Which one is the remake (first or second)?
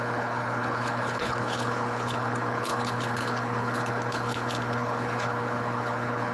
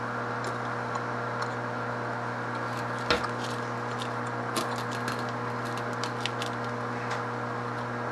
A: first